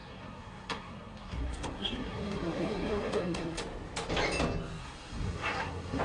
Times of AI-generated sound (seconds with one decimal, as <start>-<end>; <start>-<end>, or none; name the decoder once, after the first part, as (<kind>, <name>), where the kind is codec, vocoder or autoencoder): 0.0-3.6 (codec, SNAC); 4.8-6.0